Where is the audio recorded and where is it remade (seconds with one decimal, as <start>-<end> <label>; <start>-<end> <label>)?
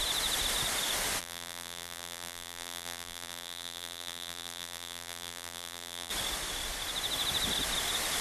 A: 0.0-1.2 recorded; 1.2-6.1 remade; 6.1-8.2 recorded